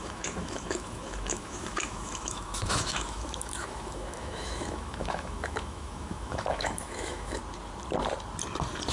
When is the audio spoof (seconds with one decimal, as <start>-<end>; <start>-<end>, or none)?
0.0-7.4